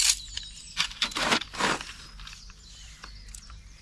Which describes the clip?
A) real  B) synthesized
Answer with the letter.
B